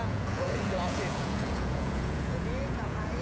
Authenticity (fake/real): fake